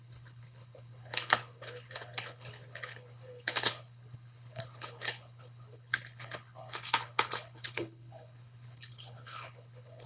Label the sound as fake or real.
fake